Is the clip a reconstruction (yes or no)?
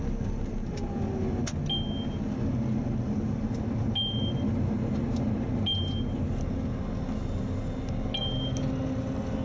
no